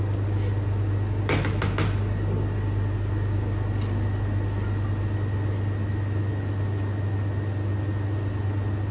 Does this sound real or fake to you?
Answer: real